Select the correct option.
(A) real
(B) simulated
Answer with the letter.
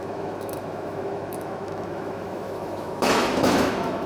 B